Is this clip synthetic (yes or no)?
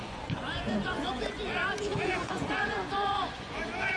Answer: yes